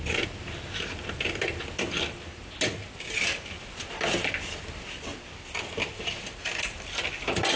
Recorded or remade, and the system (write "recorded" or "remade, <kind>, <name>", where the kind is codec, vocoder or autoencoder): recorded